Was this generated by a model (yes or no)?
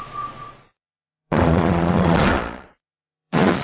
yes